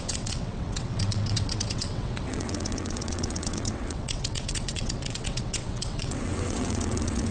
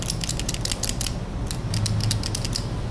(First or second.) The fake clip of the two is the first